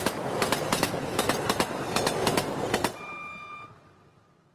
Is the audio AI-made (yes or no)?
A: no